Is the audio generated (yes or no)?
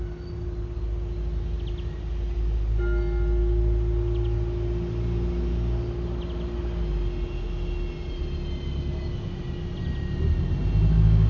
no